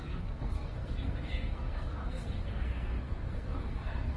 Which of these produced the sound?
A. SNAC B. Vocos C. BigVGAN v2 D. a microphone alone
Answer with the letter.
A